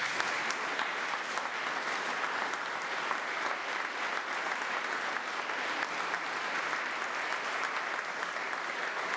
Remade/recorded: recorded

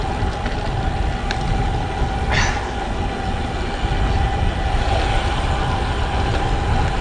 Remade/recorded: recorded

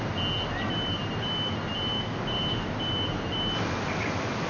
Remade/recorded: recorded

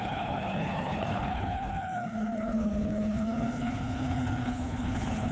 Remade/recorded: remade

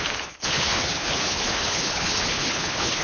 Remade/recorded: remade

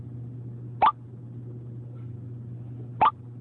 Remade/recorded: recorded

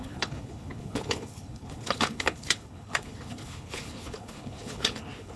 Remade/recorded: remade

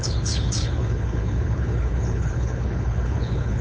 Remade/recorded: remade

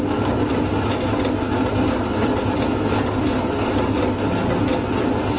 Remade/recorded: recorded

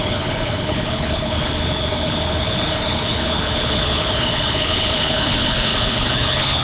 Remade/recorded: remade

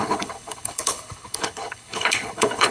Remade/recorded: remade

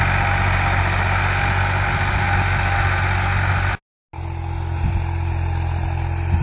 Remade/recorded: recorded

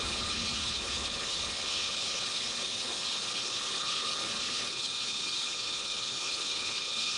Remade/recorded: remade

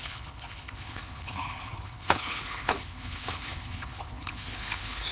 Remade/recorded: remade